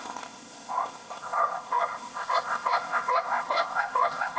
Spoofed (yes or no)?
yes